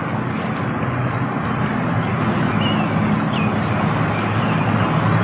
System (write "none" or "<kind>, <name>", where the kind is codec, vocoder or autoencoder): none